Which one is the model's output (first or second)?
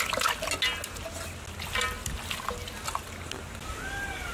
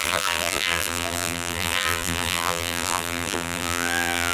second